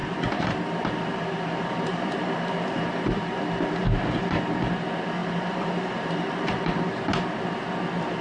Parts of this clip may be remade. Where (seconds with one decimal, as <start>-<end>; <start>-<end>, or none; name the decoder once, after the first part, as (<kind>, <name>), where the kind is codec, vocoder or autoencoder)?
0.0-3.4 (vocoder, BigVGAN v2); 5.2-7.0